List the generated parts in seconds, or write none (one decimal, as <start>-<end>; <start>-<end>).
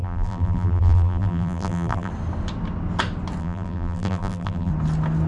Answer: 0.0-2.1; 3.4-4.7